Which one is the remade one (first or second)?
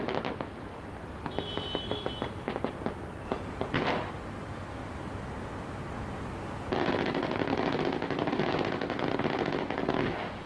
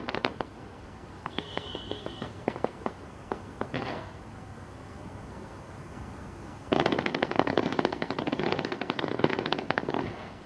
second